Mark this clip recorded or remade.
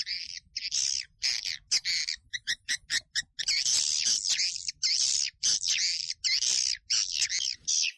recorded